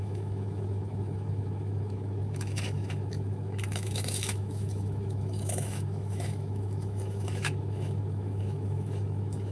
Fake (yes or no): yes